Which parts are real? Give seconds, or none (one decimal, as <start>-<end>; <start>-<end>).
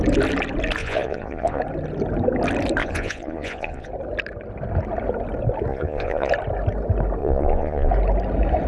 0.0-0.8; 1.6-2.8; 3.9-5.7; 6.3-7.2; 7.9-8.7